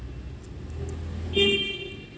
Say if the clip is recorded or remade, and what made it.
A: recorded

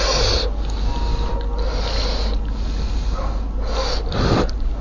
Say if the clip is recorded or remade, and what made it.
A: recorded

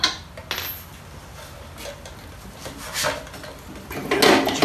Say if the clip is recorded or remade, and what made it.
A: recorded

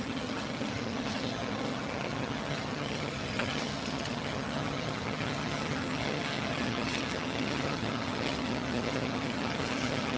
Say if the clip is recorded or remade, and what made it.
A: remade, vocoder, HiFi-GAN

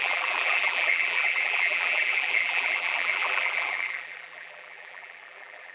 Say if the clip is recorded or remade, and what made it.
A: remade, vocoder, BigVGAN v2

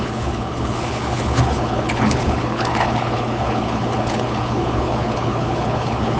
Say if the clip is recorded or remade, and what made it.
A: remade, codec, HILCodec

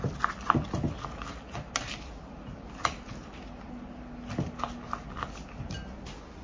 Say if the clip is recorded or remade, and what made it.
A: recorded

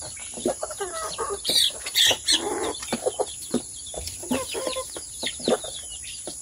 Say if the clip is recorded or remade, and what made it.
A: remade, vocoder, BigVGAN v2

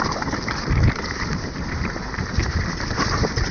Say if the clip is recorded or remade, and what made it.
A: remade, vocoder, BigVGAN v2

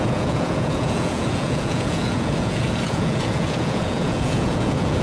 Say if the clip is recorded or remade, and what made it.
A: remade, vocoder, Vocos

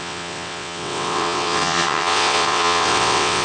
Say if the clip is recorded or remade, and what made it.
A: remade, vocoder, WaveNeXt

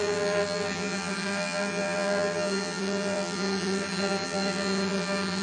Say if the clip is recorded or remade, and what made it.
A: remade, vocoder, BigVGAN v2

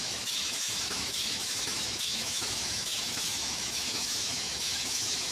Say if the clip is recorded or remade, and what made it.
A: remade, autoencoder, DAC-VAE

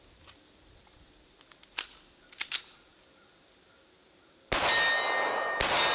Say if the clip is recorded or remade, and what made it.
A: recorded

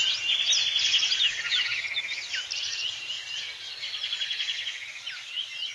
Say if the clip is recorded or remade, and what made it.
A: recorded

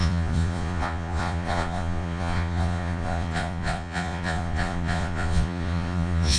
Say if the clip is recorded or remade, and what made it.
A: remade, vocoder, Vocos